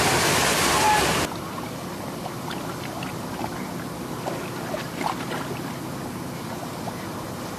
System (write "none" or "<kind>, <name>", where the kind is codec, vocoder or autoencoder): none